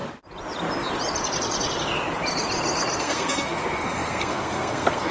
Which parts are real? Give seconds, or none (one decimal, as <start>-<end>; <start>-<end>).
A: 0.0-3.0